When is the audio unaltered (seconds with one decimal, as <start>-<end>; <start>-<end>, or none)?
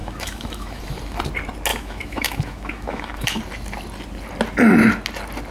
0.8-1.7; 3.4-5.5